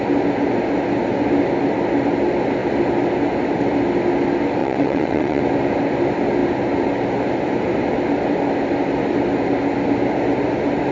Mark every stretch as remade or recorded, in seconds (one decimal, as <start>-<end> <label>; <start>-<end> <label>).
0.0-4.6 recorded; 4.6-5.4 remade; 5.4-10.9 recorded